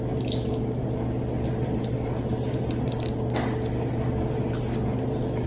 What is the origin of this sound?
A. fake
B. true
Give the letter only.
B